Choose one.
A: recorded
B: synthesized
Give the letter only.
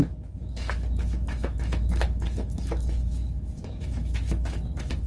B